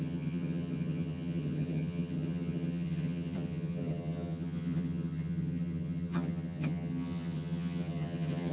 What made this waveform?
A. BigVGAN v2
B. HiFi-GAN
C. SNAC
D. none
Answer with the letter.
B